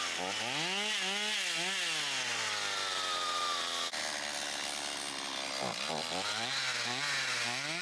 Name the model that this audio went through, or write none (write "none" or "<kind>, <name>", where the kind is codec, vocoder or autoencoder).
none